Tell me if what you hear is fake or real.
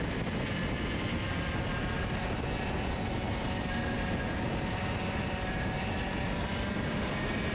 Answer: real